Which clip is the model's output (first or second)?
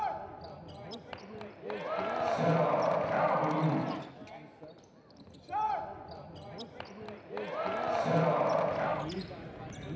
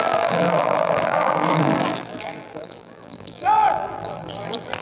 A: second